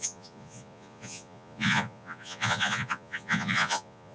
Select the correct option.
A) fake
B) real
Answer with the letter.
A